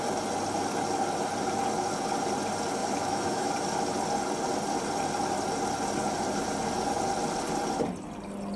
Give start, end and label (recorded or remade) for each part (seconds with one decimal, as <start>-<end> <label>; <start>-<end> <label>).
0.0-2.8 recorded; 2.8-3.5 remade; 3.5-8.6 recorded